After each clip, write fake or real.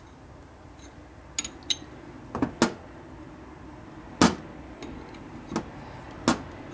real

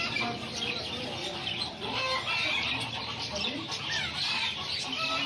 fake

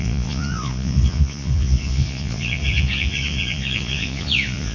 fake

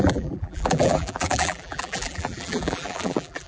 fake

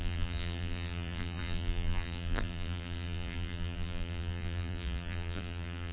fake